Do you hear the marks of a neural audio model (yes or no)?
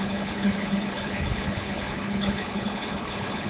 yes